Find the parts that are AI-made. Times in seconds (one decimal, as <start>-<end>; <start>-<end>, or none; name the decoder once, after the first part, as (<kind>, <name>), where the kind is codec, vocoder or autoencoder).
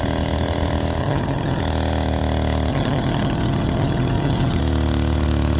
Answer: 1.0-1.6 (vocoder, HiFi-GAN); 2.7-4.6